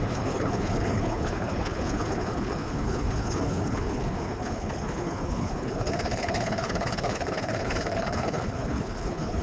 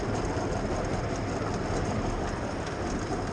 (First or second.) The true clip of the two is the second